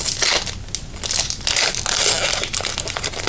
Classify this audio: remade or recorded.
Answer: recorded